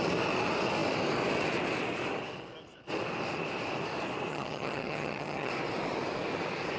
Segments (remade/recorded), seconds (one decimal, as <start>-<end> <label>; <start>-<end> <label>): 0.0-4.3 recorded; 4.3-5.5 remade; 5.5-6.8 recorded